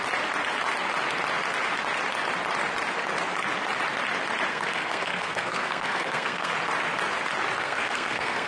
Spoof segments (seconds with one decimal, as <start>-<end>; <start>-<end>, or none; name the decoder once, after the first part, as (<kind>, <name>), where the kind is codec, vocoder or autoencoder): 4.5-6.5 (codec, SNAC); 7.6-8.5